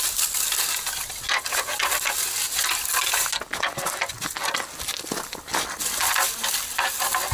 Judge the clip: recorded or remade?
recorded